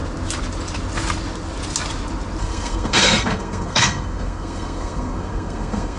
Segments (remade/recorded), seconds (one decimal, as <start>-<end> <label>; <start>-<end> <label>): 0.0-2.4 recorded; 2.4-6.0 remade